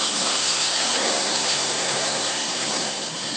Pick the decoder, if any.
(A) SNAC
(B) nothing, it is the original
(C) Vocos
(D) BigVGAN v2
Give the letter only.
A